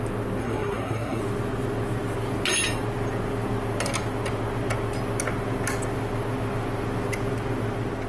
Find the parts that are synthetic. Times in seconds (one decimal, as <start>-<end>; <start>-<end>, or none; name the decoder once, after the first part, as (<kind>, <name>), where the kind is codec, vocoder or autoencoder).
0.4-1.2 (codec, SNAC)